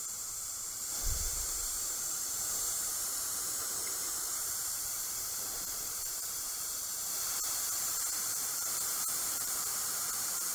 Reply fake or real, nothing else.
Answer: fake